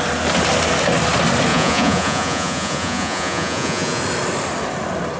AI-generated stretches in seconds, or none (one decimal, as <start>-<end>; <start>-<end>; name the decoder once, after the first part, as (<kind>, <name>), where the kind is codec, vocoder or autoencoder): 1.5-4.0 (vocoder, Vocos)